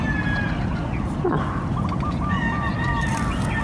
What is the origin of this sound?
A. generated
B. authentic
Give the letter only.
B